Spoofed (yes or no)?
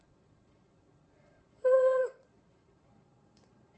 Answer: yes